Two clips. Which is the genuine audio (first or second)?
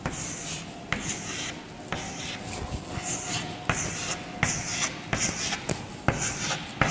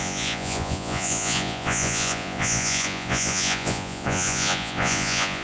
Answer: first